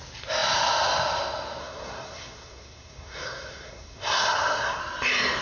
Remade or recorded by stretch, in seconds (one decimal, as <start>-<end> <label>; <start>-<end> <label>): 0.0-1.6 recorded; 1.6-4.8 remade; 4.8-5.4 recorded